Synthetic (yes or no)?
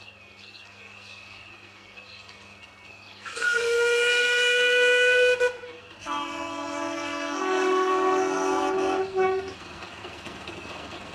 yes